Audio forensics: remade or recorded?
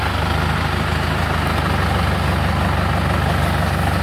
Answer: recorded